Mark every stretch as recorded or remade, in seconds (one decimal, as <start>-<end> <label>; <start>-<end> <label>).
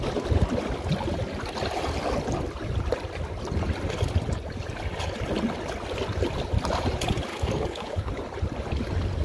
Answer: 0.0-7.3 recorded; 7.3-8.1 remade; 8.1-9.2 recorded